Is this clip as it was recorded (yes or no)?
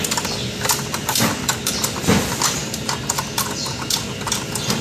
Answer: no